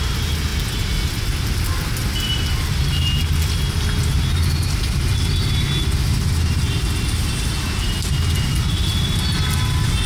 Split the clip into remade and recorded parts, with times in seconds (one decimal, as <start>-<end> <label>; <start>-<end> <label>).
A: 0.0-10.1 recorded